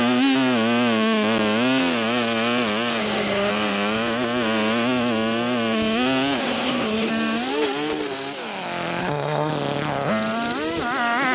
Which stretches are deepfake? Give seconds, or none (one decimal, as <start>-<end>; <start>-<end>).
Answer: 3.0-3.5; 6.4-7.1; 9.0-9.5